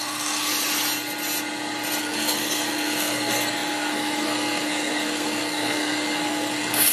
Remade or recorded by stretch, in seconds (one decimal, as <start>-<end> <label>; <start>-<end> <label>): 0.0-0.5 remade; 0.5-2.0 recorded; 2.0-6.9 remade